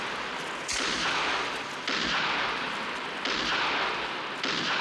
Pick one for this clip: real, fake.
real